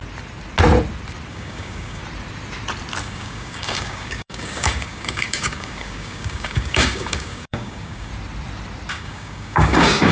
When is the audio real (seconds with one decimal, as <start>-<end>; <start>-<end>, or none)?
0.0-1.3; 2.0-3.0; 8.1-8.9